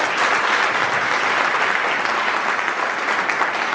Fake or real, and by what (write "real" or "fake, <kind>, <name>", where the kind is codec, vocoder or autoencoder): real